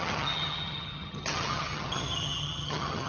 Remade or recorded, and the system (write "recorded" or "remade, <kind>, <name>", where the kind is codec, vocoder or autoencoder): remade, vocoder, HiFi-GAN